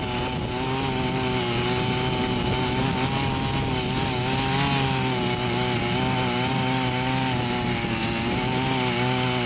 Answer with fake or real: real